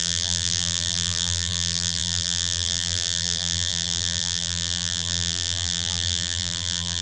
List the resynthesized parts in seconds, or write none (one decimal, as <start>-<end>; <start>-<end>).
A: 0.0-7.0